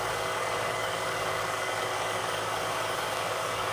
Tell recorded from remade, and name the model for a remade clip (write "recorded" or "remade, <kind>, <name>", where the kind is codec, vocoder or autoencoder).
remade, codec, DAC